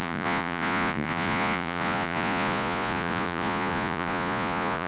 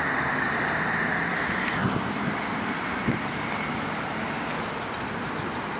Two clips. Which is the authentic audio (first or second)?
second